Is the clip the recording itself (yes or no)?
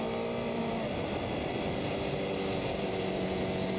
yes